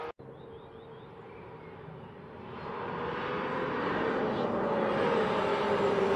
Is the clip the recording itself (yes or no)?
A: no